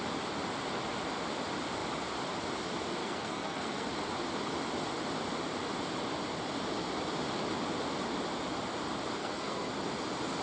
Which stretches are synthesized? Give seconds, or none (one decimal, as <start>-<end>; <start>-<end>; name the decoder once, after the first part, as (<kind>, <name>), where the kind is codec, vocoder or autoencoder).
3.0-3.9 (codec, SNAC); 9.2-9.7